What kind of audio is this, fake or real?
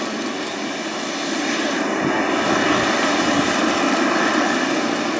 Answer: real